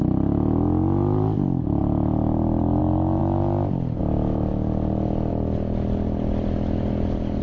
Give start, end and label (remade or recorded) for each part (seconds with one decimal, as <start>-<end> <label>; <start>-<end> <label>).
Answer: 0.0-7.4 recorded